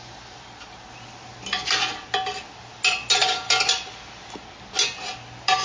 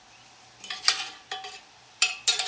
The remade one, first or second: second